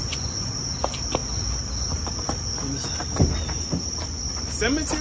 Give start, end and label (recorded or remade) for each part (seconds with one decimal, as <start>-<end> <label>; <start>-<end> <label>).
0.0-0.6 remade; 0.6-5.0 recorded